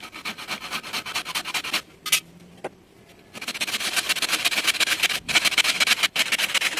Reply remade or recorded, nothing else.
recorded